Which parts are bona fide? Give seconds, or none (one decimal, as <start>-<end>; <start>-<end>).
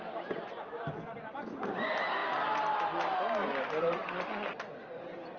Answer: 0.0-5.4